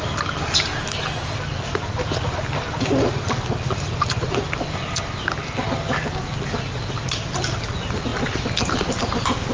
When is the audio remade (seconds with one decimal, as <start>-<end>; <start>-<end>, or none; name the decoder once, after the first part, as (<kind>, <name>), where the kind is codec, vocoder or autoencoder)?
none